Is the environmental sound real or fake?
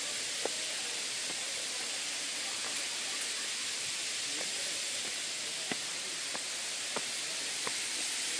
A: real